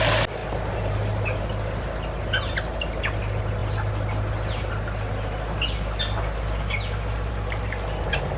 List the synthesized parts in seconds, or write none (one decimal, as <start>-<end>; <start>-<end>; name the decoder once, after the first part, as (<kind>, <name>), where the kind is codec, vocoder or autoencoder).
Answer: none